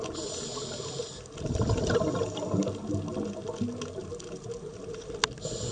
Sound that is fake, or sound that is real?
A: real